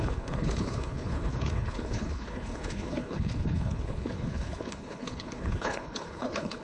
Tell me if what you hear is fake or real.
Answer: fake